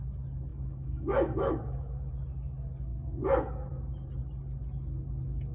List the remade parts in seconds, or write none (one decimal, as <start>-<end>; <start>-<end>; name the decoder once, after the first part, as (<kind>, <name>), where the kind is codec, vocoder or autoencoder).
0.5-2.1 (autoencoder, DAC-VAE)